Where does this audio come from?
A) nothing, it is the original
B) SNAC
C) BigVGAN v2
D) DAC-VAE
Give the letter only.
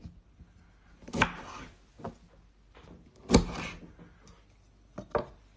A